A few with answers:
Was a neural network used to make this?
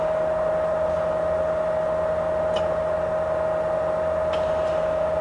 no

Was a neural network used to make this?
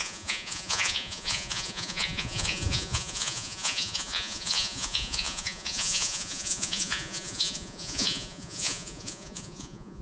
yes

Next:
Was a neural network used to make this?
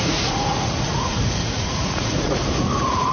yes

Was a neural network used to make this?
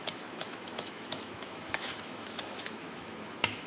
yes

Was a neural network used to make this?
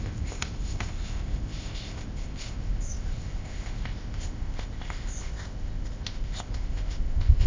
yes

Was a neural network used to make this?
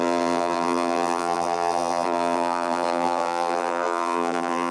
yes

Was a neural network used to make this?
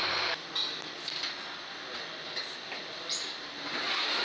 no